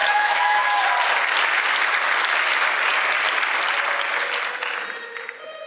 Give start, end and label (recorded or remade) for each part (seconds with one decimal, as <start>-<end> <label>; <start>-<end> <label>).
0.0-0.8 remade; 0.8-5.7 recorded